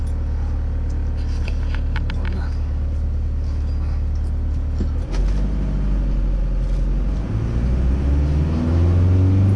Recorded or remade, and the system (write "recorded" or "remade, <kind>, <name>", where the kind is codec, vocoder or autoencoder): recorded